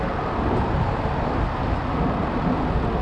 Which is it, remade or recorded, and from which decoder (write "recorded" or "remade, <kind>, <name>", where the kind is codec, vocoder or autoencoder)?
recorded